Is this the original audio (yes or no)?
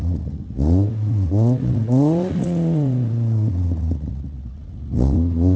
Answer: no